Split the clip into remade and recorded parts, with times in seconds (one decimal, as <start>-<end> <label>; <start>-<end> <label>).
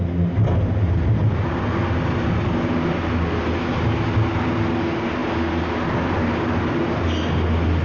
0.0-7.8 recorded